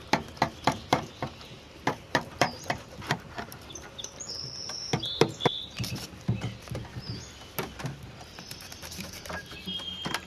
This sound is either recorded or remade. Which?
remade